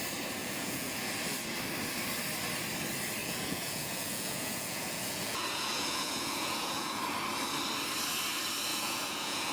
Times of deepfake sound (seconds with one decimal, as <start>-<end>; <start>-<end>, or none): 0.4-1.1; 3.2-7.0; 8.7-9.5